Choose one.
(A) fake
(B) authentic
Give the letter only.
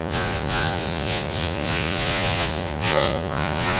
A